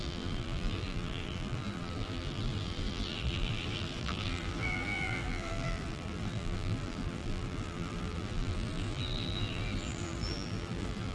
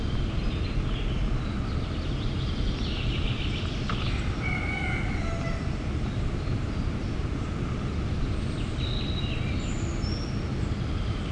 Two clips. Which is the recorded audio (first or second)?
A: second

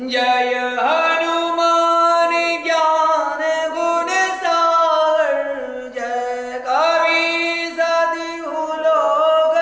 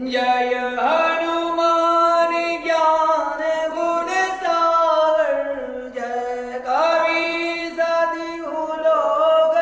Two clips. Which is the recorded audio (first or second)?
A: first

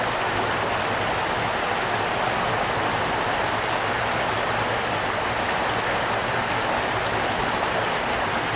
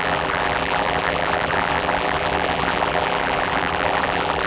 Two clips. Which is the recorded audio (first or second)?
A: first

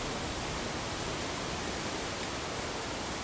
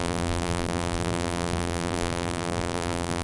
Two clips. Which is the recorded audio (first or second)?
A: first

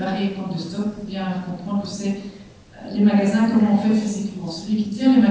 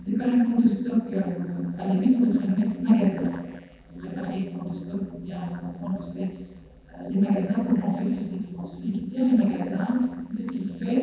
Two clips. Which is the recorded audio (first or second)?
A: first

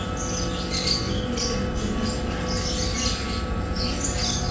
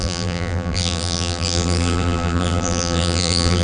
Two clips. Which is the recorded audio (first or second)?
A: first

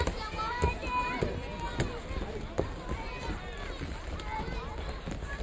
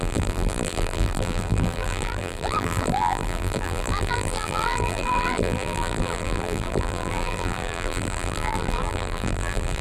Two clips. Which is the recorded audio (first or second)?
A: first